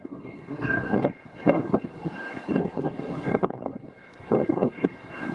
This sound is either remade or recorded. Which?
remade